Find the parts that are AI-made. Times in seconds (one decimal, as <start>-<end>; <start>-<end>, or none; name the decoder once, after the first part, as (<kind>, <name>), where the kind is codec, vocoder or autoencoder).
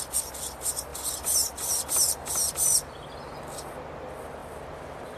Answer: none